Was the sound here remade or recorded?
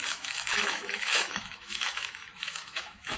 remade